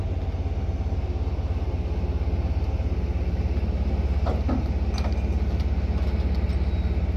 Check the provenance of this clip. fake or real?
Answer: real